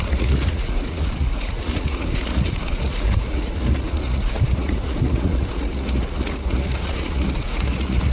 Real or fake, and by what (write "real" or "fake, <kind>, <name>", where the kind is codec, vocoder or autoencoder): fake, vocoder, Vocos